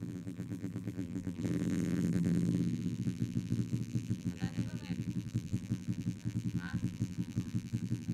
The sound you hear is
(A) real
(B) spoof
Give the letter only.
B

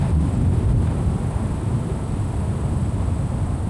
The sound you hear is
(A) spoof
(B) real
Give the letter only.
B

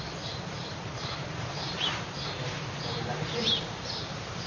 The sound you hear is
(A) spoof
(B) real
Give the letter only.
A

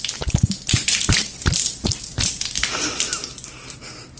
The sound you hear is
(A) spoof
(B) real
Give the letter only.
B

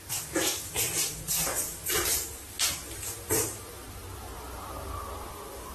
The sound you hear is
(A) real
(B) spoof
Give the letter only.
B